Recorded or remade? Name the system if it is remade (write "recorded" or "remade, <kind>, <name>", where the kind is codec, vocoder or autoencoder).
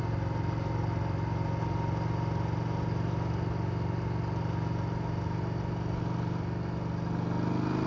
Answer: recorded